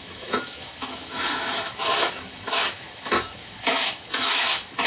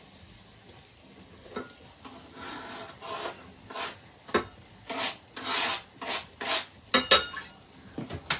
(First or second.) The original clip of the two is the second